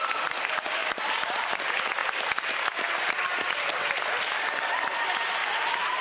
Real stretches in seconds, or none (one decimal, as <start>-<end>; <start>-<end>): 2.0-4.2; 5.4-6.0